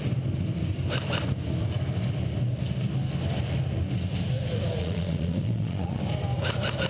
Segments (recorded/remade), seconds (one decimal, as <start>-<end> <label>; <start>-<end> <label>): 0.0-4.8 recorded; 4.8-6.0 remade; 6.0-6.9 recorded